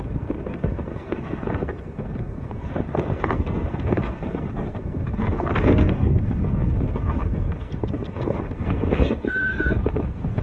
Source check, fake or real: fake